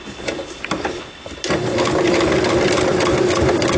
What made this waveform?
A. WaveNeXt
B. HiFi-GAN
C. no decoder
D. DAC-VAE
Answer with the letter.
C